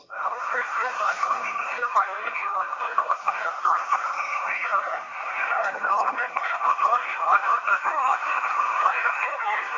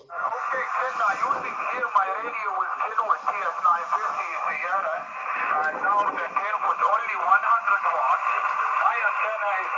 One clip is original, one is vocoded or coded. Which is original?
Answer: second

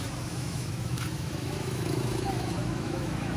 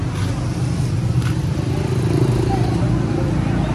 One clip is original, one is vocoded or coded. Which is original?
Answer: second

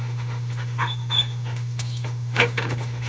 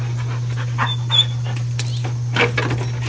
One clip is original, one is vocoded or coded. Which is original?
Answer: second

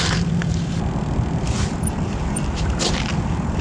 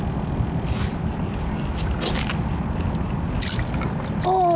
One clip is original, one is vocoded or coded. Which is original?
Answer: second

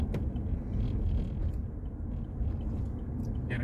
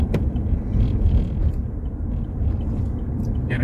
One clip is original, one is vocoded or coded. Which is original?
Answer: first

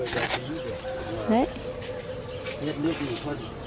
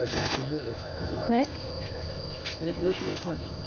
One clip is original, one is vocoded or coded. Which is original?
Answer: first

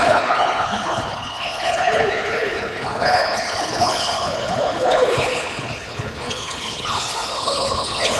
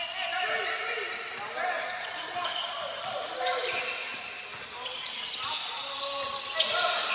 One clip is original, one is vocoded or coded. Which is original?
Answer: second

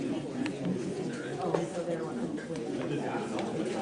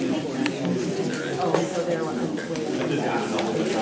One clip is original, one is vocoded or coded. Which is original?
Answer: second